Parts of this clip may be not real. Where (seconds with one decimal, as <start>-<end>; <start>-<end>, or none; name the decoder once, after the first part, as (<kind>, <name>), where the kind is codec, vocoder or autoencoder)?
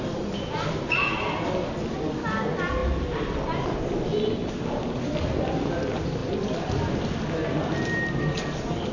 none